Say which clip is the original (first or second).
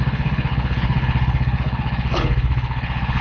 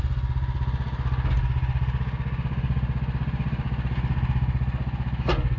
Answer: second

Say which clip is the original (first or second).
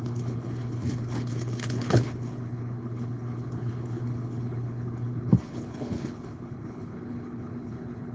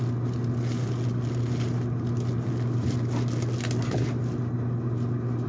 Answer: second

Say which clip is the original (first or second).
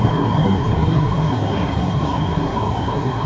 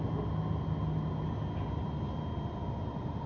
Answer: second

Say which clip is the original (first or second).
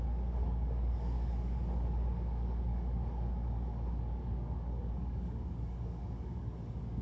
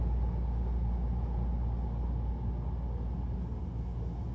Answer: second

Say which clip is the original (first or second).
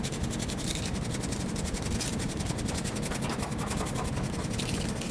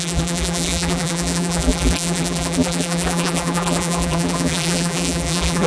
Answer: first